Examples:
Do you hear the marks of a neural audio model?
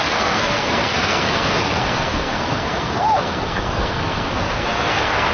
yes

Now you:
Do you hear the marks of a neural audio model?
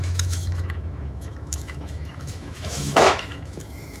yes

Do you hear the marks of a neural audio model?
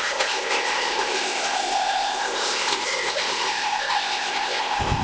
yes